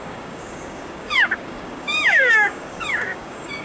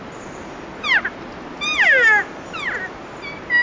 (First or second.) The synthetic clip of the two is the first